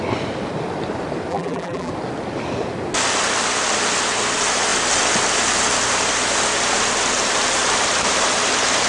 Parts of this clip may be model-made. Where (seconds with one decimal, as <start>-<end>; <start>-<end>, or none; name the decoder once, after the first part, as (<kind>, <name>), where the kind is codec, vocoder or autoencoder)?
1.3-1.9 (vocoder, BigVGAN v2)